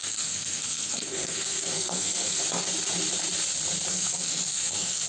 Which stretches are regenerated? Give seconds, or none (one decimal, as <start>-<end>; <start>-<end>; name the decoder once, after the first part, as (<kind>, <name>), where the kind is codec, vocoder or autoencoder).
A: 0.0-2.4 (codec, SNAC); 3.9-5.1